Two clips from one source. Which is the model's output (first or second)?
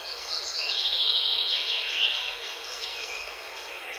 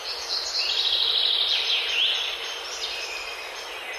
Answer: first